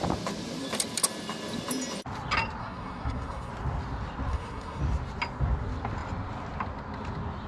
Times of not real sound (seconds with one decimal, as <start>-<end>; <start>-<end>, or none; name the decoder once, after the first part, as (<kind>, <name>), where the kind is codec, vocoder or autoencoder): 2.6-3.5 (codec, SNAC); 4.3-4.8